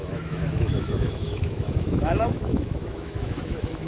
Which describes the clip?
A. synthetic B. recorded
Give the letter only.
A